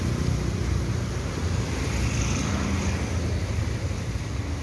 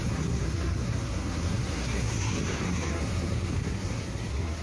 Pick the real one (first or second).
first